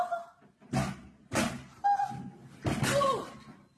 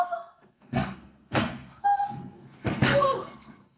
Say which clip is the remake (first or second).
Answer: second